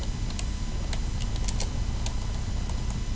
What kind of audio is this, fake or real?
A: real